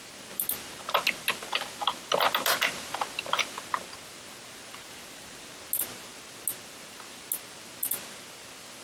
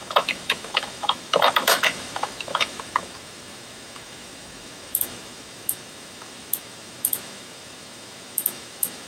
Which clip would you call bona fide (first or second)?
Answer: first